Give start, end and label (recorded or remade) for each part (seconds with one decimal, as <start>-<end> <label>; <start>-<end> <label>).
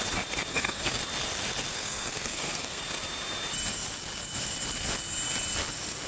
0.0-0.5 recorded; 0.5-1.0 remade; 1.0-1.7 recorded; 1.7-2.8 remade; 2.8-6.1 recorded